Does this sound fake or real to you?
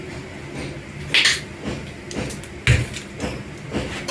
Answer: real